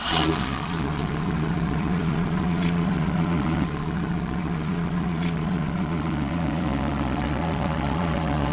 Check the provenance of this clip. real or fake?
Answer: fake